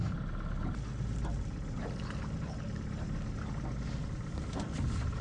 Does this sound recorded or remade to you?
recorded